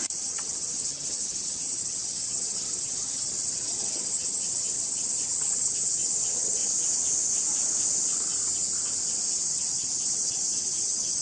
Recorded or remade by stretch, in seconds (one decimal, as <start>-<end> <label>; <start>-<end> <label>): 0.0-6.6 remade; 6.6-9.3 recorded; 9.3-11.2 remade